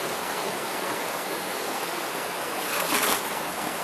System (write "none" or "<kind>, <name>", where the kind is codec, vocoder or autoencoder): codec, SNAC